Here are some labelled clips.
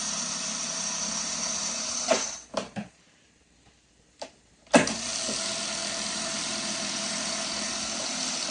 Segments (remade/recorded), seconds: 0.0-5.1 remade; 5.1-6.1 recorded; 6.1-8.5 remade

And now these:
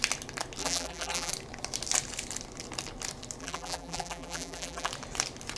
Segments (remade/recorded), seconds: 0.0-0.6 recorded; 0.6-1.3 remade; 1.3-3.4 recorded; 3.4-4.9 remade; 4.9-5.6 recorded

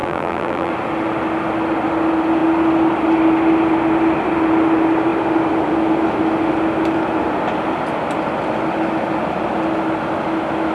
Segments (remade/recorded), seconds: 0.0-0.7 remade; 0.7-10.7 recorded

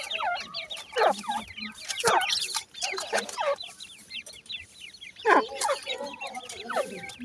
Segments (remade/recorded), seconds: 0.0-7.2 recorded

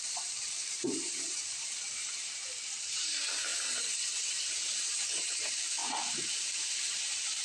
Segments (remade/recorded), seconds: 0.0-7.4 remade

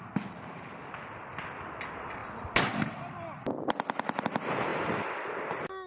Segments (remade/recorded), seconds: 0.0-5.9 recorded

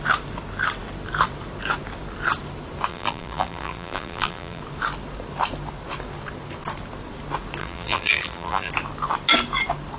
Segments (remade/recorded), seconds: 0.0-2.9 recorded; 2.9-4.6 remade; 4.6-7.6 recorded; 7.6-8.7 remade; 8.7-10.0 recorded